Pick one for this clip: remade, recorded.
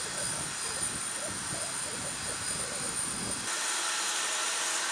recorded